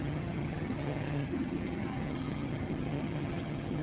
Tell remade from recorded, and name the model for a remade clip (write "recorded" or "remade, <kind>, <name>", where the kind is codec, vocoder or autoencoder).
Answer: remade, vocoder, HiFi-GAN